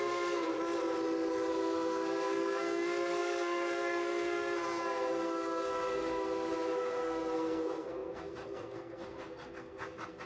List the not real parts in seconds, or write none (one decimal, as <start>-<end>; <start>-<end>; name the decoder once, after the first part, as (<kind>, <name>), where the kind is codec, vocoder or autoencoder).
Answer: 0.0-0.5 (codec, SNAC); 1.5-10.3